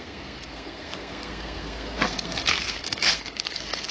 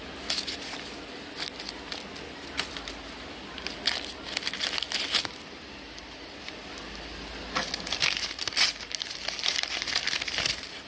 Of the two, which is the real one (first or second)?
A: second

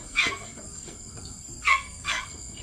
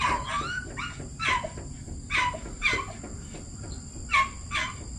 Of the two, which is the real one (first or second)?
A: second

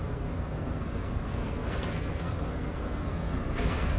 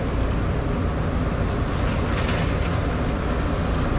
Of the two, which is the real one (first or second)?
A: second